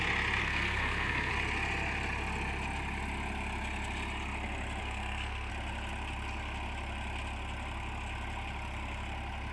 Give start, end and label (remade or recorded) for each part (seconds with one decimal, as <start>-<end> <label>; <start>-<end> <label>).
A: 0.0-0.4 recorded; 0.4-1.3 remade; 1.3-4.8 recorded; 4.8-5.5 remade; 5.5-9.5 recorded